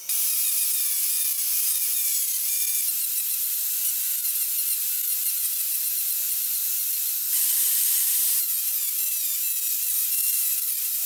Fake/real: fake